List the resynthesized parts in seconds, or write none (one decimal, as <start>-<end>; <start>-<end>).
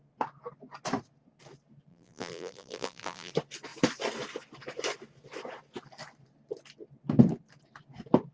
1.9-3.3